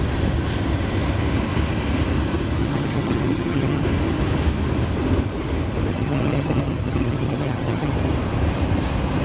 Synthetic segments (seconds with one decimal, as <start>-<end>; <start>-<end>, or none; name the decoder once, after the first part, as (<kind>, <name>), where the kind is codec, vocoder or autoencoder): 2.6-3.8 (vocoder, HiFi-GAN); 5.9-7.9